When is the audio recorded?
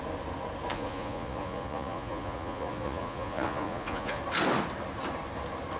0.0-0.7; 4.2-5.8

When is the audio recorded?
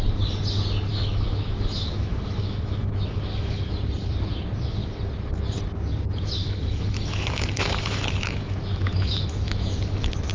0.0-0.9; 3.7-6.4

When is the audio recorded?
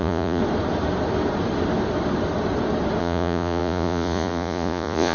0.4-3.0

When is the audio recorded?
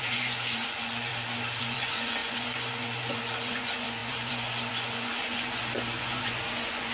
1.1-1.6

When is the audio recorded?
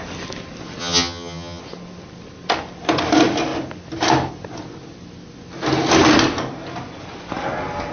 0.0-0.8; 1.6-7.9